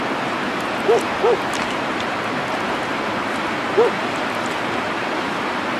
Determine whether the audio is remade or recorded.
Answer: recorded